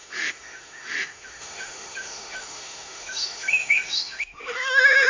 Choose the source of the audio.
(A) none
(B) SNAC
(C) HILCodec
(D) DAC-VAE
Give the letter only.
D